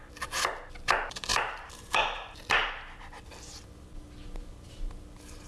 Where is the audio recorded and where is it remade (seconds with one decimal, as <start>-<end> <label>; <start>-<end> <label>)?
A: 0.0-1.3 recorded; 1.3-2.7 remade; 2.7-5.5 recorded